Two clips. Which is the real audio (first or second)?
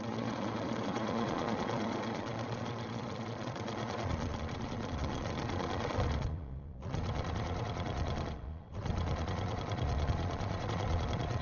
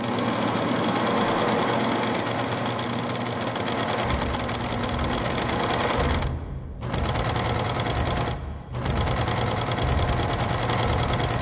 second